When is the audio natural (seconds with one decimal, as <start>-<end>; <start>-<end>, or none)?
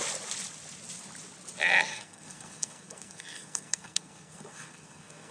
0.0-1.9